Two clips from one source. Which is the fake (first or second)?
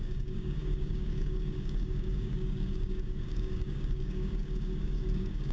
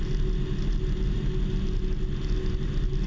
first